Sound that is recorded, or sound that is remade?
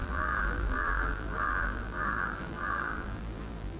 remade